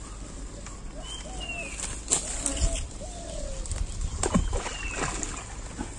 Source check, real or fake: real